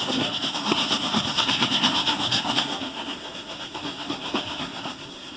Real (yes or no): no